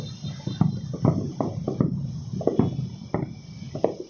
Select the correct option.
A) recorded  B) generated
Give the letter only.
A